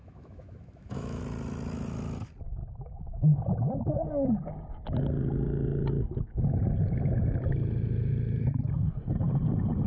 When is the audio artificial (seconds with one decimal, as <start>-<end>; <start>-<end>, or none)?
0.0-1.2